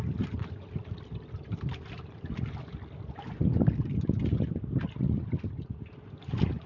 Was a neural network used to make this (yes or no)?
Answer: no